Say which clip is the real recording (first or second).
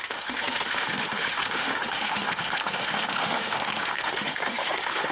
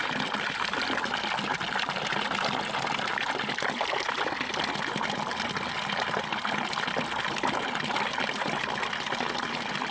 second